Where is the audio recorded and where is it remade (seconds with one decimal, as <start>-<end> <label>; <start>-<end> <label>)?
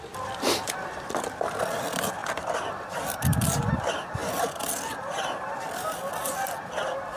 0.0-7.2 remade